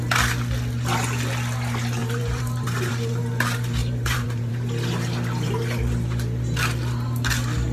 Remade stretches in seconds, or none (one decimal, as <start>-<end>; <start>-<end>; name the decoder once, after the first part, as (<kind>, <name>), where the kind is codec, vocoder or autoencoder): 2.0-2.9 (vocoder, BigVGAN v2); 3.8-4.5